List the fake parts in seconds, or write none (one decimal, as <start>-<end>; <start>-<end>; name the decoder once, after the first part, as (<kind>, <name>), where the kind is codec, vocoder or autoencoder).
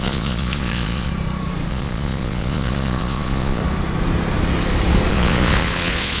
0.0-1.1 (vocoder, Vocos); 1.7-3.6; 5.1-6.2